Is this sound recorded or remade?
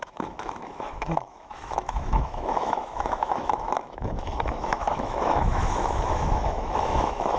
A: remade